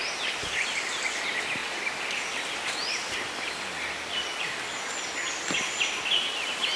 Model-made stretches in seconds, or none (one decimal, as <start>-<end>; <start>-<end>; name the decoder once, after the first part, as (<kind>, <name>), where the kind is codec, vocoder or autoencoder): none